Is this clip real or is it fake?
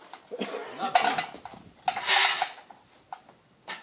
real